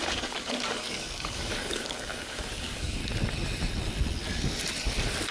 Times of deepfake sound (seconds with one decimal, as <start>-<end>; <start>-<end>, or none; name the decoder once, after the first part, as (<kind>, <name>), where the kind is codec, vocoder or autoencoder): 0.0-3.0 (codec, DAC)